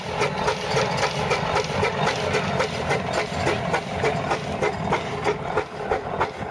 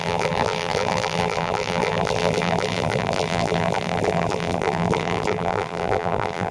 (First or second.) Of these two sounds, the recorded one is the first